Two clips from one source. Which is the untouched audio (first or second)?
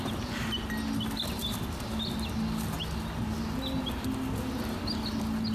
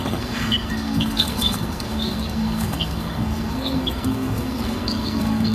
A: first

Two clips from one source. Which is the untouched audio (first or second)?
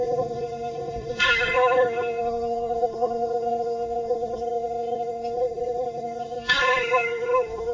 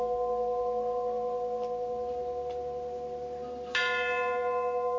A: second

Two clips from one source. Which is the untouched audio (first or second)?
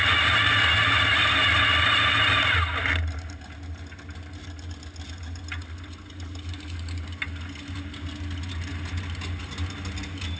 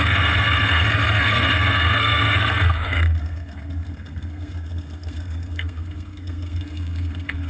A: first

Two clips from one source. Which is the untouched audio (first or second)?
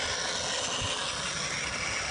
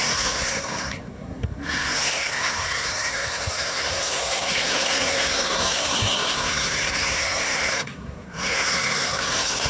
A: first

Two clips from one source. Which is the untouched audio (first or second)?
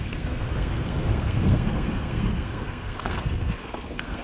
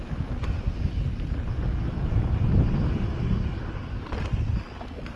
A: second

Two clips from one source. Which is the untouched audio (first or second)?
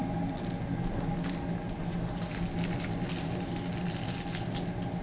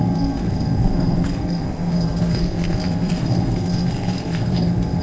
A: first